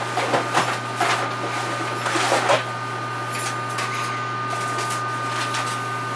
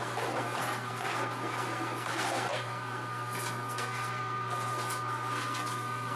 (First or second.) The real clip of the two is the first